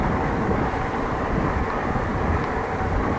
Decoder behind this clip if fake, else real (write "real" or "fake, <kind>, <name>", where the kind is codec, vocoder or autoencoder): real